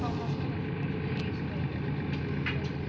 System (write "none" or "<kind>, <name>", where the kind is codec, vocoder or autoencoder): none